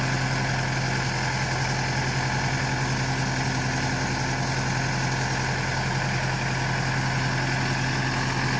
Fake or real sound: real